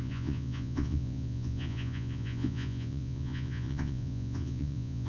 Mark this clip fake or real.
fake